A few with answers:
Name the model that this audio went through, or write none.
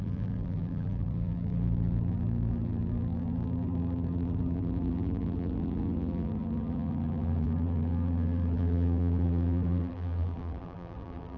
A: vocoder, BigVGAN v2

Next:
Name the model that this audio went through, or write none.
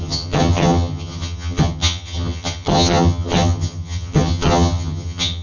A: vocoder, HiFi-GAN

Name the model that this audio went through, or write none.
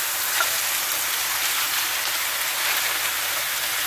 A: none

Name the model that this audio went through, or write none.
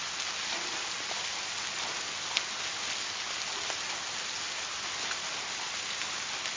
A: none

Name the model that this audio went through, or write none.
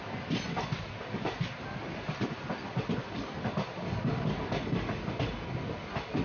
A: none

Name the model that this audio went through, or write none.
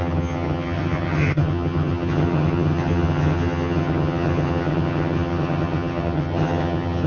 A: vocoder, HiFi-GAN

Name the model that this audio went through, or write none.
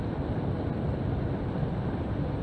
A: none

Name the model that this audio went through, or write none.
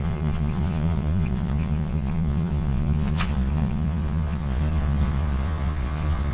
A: vocoder, Vocos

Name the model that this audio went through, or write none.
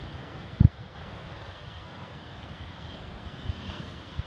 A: codec, SNAC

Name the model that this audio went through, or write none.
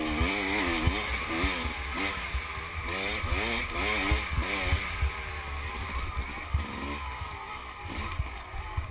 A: none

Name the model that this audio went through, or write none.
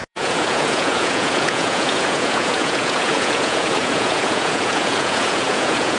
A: vocoder, Vocos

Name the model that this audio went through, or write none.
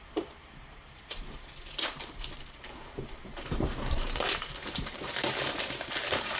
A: vocoder, BigVGAN v2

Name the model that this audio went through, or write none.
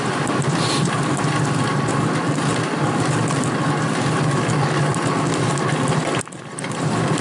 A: none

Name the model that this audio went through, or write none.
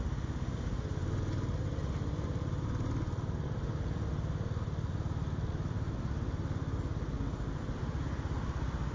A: none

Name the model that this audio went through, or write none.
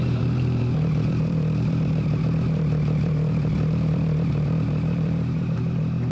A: vocoder, BigVGAN v2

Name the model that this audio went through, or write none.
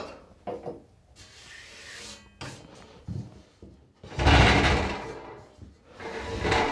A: none